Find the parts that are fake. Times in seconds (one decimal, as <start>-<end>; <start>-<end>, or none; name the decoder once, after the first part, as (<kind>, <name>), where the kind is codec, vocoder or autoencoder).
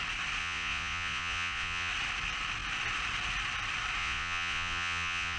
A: 0.4-1.9 (vocoder, Vocos); 4.0-5.4